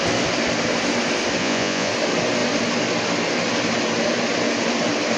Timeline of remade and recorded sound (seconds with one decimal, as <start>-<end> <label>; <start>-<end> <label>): 0.0-1.4 recorded; 1.4-1.9 remade; 1.9-5.2 recorded